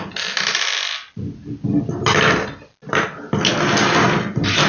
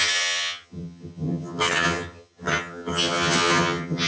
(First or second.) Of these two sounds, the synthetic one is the second